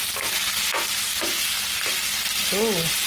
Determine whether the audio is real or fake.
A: real